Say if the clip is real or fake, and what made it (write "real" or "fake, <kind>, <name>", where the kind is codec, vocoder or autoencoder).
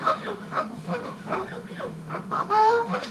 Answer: fake, autoencoder, DAC-VAE